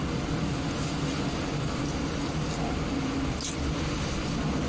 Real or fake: real